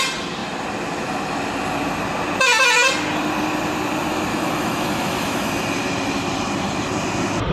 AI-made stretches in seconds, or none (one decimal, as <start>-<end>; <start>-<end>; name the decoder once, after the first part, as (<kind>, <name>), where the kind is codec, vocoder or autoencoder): 4.3-5.5 (autoencoder, DAC-VAE)